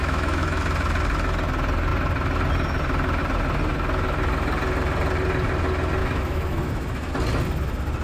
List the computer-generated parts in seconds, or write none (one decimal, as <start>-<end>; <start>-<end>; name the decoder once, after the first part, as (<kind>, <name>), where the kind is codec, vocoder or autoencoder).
0.0-0.6 (autoencoder, DAC-VAE); 6.0-7.1